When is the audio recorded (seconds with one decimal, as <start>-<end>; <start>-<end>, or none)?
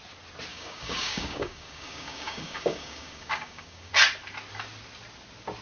0.0-0.5; 3.9-5.6